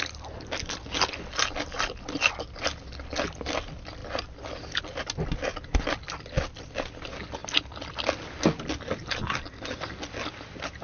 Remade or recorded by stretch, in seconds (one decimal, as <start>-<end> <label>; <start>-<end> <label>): 0.0-10.8 recorded